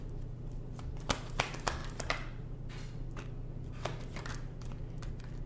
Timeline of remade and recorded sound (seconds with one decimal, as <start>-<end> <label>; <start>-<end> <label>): 0.0-5.5 recorded